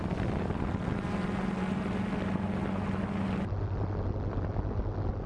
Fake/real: real